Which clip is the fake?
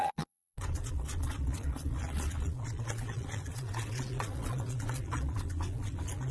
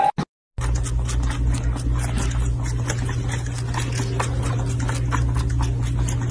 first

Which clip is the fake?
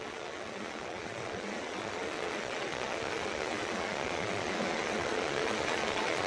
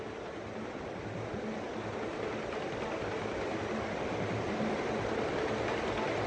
first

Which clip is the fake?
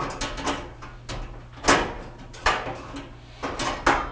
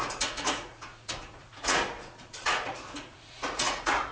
second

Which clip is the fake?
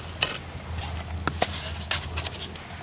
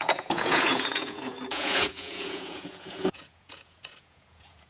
second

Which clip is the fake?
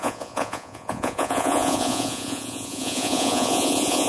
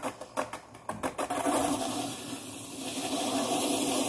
first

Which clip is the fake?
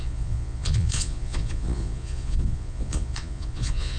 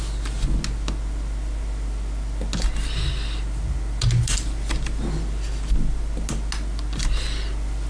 first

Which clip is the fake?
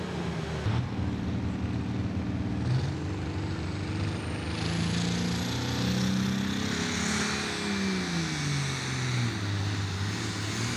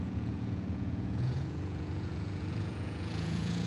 second